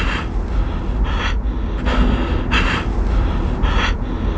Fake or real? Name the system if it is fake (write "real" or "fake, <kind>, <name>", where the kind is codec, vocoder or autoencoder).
real